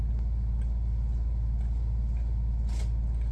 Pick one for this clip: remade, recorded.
recorded